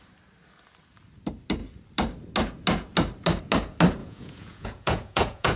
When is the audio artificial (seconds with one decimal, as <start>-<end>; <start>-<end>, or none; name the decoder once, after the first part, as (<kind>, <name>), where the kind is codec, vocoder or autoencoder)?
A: 4.0-5.6 (vocoder, Vocos)